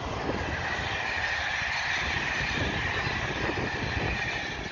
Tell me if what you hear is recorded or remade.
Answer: remade